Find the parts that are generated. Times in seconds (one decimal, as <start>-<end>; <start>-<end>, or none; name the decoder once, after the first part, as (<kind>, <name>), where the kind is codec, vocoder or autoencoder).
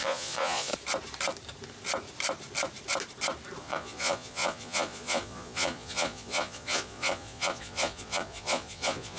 0.0-0.7 (vocoder, Vocos); 3.6-9.2